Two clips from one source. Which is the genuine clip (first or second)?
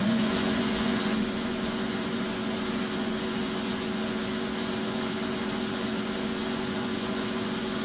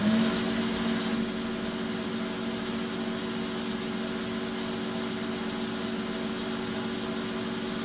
second